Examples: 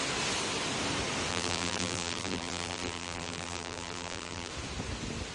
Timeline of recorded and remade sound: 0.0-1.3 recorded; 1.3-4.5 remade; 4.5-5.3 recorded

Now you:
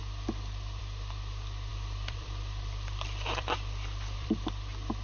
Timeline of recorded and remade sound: 0.0-1.7 recorded; 1.7-4.3 remade; 4.3-5.0 recorded

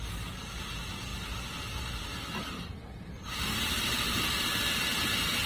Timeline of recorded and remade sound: 0.0-5.5 remade